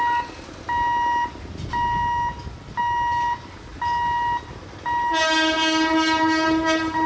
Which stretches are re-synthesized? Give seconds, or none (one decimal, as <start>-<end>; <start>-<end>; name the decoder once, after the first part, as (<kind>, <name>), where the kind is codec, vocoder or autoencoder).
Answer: none